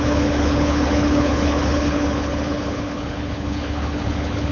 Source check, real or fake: fake